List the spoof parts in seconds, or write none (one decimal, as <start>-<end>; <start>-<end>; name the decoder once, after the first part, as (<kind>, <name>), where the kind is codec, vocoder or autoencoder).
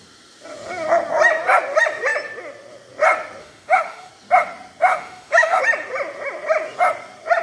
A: 3.4-4.1 (autoencoder, DAC-VAE); 4.9-5.6